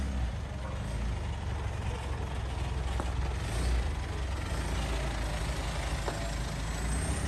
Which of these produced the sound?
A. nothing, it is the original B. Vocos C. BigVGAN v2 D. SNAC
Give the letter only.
A